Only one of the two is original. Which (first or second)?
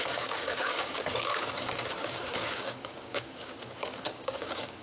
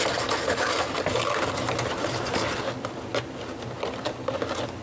second